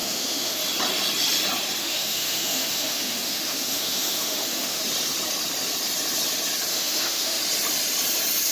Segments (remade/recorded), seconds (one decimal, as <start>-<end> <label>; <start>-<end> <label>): 0.0-0.6 remade; 0.6-1.8 recorded; 1.8-4.8 remade; 4.8-6.7 recorded; 6.7-7.4 remade; 7.4-8.5 recorded